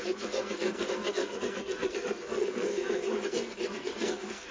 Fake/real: fake